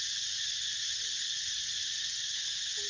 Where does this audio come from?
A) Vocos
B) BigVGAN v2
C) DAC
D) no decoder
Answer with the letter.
D